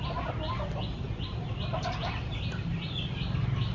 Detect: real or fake real